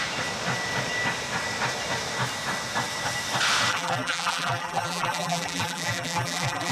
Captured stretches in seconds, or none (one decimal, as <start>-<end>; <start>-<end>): 0.0-3.7